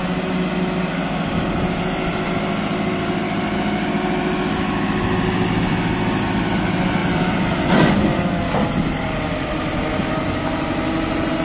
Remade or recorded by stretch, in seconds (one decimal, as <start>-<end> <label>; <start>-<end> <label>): 0.0-7.0 recorded; 7.0-8.3 remade; 8.3-11.4 recorded